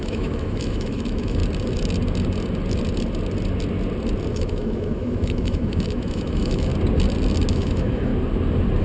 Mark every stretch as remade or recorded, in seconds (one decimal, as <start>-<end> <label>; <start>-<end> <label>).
0.0-1.4 remade; 1.4-4.3 recorded; 4.3-6.7 remade; 6.7-7.5 recorded; 7.5-8.1 remade; 8.1-8.8 recorded